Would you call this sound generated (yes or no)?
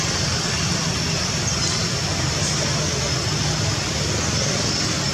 no